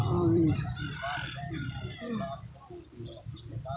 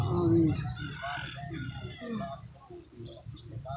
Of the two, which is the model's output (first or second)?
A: first